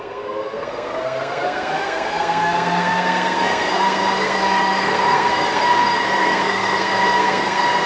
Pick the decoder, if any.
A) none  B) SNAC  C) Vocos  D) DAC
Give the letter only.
B